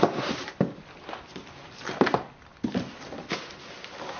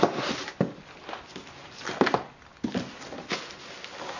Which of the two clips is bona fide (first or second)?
second